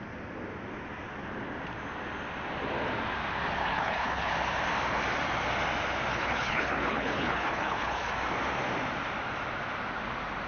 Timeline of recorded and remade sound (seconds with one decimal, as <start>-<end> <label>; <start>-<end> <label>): 0.0-3.6 recorded; 3.6-4.3 remade; 4.3-6.1 recorded; 6.1-8.1 remade; 8.1-10.5 recorded